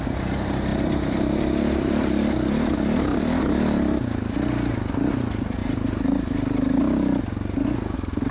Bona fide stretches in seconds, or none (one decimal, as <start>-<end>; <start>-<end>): 0.0-0.7; 2.1-3.1; 4.2-5.6; 6.8-8.3

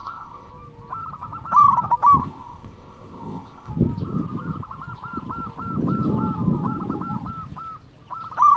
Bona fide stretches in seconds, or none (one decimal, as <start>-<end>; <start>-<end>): 0.5-2.2; 3.7-8.6

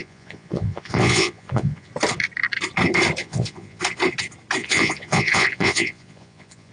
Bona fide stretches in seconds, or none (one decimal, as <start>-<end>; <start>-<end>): 1.9-3.2; 3.8-4.6